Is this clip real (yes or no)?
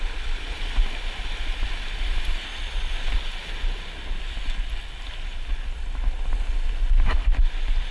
yes